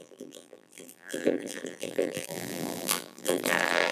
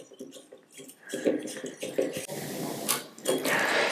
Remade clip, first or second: first